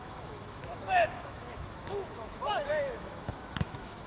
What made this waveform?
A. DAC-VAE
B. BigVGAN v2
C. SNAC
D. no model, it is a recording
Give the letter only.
A